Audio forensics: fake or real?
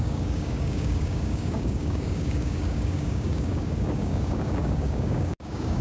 fake